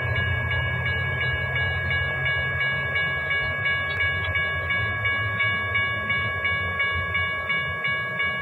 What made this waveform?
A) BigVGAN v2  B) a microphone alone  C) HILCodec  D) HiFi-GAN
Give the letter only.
B